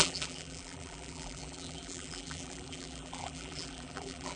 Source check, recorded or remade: remade